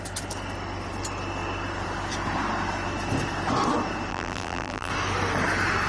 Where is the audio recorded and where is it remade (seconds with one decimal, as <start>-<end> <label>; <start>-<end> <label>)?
0.0-4.1 recorded; 4.1-4.9 remade; 4.9-5.9 recorded